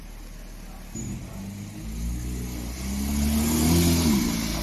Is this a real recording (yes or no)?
yes